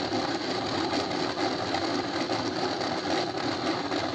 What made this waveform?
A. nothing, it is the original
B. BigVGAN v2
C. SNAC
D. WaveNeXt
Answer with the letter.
A